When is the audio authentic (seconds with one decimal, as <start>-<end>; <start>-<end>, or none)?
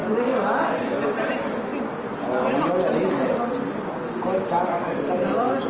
0.0-1.2; 1.7-5.1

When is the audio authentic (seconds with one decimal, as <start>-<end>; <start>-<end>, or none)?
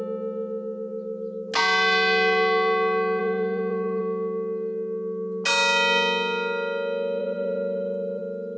0.0-3.2; 4.0-7.2; 8.2-8.6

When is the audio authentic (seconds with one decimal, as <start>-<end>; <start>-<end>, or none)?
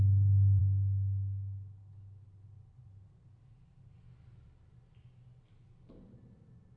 0.0-6.8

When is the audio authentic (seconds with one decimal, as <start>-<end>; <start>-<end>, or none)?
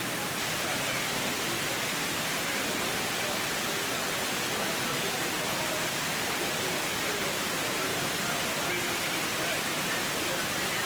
7.9-9.6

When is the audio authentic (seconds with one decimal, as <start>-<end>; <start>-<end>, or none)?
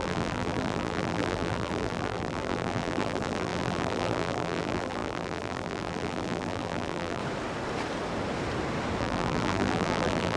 7.2-9.0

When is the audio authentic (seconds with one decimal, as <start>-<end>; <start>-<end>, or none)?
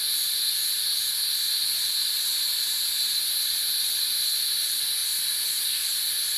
0.0-2.0; 4.3-6.4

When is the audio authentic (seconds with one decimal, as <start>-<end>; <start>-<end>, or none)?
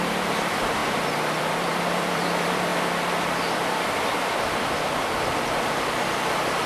0.8-1.4; 2.7-6.7